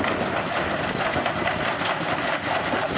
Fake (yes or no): no